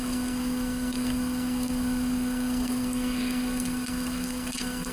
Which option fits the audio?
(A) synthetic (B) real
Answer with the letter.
A